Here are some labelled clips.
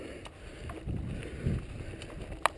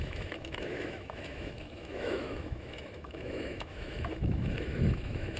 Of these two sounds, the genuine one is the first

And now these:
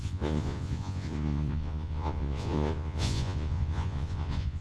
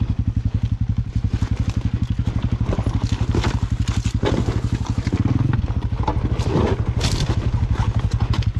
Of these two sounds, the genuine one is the second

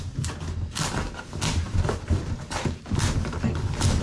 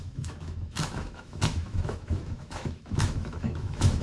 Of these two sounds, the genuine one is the first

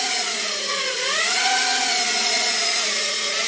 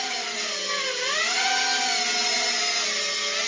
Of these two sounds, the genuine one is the second